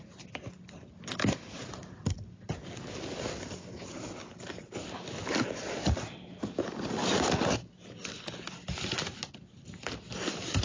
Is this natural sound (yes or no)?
yes